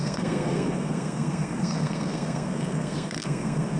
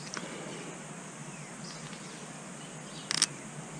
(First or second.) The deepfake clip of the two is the first